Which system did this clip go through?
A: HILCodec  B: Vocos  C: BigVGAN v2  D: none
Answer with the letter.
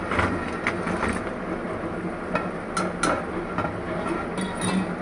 D